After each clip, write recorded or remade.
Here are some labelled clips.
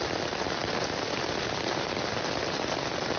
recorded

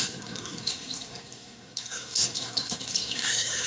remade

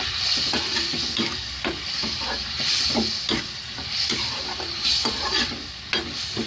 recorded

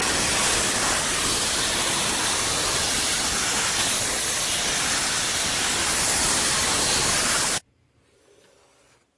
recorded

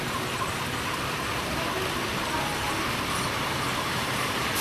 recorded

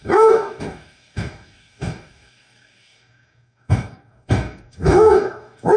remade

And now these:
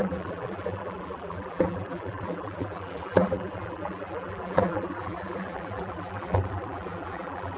remade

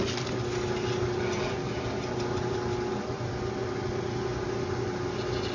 recorded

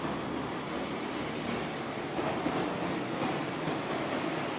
recorded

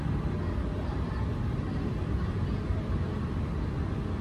recorded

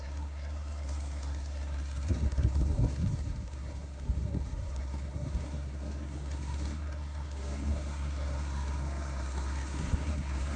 remade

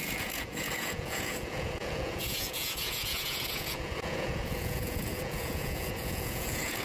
remade